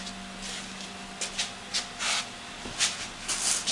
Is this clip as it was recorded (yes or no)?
yes